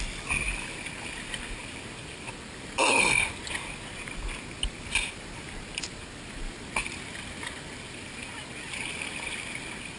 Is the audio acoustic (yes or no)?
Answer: yes